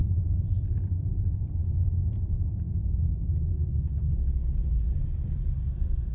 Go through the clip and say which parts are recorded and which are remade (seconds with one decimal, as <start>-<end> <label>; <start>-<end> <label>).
0.0-1.6 remade; 1.6-4.6 recorded; 4.6-6.1 remade

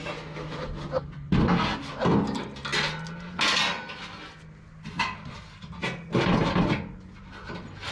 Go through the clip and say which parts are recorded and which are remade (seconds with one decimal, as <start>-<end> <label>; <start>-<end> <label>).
0.0-7.9 recorded

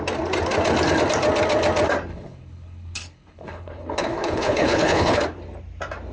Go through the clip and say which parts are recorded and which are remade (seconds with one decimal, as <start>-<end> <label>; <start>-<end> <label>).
0.0-2.1 recorded; 2.1-5.2 remade; 5.2-6.1 recorded

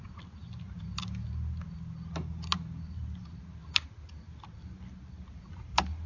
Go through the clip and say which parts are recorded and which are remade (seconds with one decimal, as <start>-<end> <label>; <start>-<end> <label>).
0.0-6.1 recorded